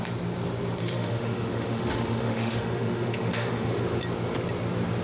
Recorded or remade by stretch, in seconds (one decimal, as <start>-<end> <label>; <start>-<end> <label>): 0.0-0.8 recorded; 0.8-3.8 remade; 3.8-5.0 recorded